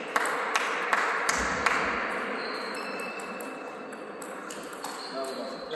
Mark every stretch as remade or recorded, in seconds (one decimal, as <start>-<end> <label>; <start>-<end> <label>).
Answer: 0.0-5.7 recorded